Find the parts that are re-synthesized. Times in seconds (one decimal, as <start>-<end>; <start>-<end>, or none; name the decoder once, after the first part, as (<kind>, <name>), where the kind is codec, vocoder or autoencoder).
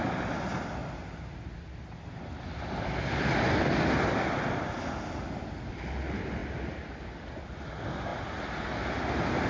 none